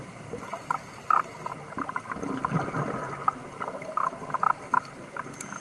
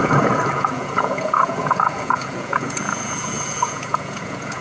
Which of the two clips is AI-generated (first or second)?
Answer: second